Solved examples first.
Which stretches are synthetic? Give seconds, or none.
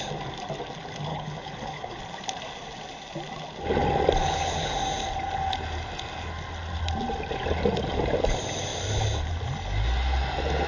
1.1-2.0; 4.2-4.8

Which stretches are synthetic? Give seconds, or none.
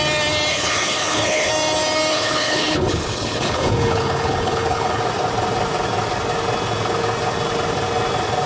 0.5-1.5; 2.1-5.0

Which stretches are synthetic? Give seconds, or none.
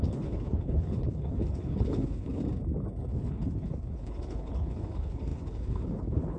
0.0-2.4; 3.1-6.4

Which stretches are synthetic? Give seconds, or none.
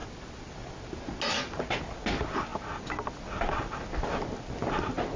none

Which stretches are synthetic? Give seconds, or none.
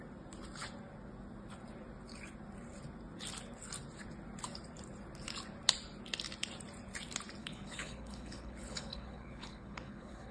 7.4-10.3